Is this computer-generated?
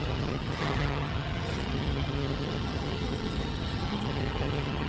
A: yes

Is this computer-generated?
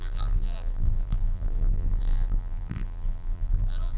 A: yes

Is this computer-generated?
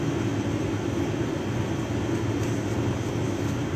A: no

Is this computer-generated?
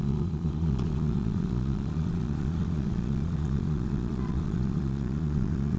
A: yes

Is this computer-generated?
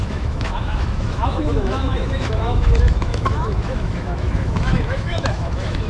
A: yes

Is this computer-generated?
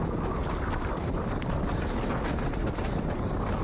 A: no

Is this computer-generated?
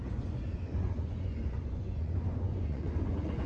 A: yes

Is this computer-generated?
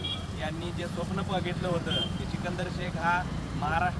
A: yes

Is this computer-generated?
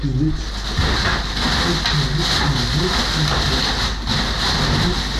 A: no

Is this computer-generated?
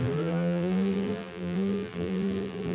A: yes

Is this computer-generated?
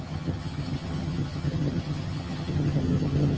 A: yes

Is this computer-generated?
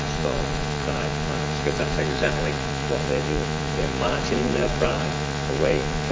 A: yes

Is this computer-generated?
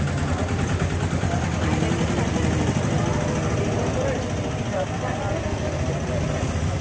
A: no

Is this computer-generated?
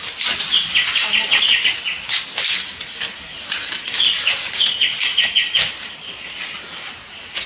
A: no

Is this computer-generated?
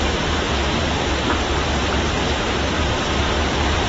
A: yes